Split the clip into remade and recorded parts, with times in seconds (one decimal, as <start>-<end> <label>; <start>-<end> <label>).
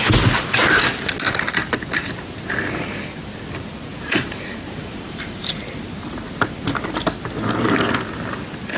0.0-3.9 recorded; 3.9-5.5 remade; 5.5-8.8 recorded